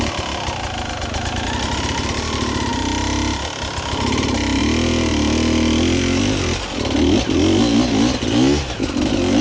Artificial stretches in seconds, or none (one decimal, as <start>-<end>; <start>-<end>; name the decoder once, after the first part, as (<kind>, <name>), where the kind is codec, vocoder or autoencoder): none